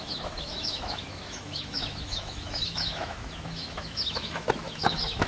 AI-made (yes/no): yes